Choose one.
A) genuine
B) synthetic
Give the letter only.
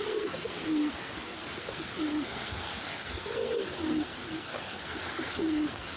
B